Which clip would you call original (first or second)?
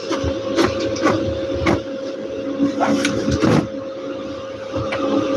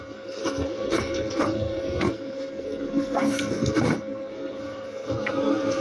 first